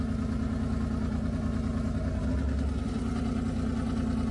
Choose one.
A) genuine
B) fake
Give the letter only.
A